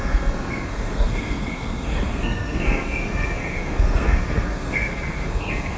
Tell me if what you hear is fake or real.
fake